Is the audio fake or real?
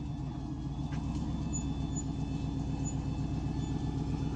real